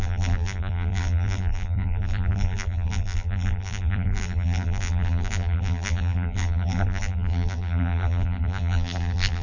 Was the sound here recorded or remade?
remade